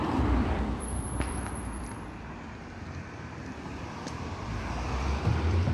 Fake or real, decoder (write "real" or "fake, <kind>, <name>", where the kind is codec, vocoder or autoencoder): fake, vocoder, BigVGAN v2